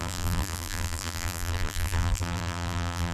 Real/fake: fake